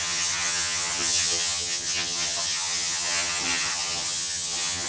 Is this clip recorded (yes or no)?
no